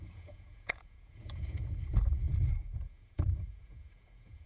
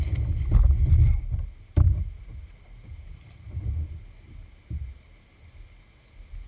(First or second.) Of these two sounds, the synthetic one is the first